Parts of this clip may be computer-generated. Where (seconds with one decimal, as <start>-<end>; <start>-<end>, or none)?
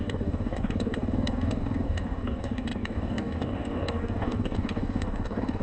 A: 0.0-5.6